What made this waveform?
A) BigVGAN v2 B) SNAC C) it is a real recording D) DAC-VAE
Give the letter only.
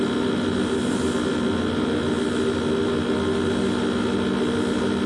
C